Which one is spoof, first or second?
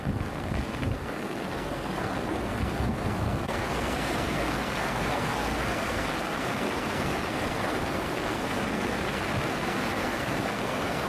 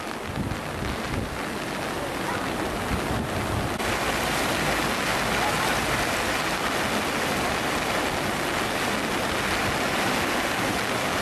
first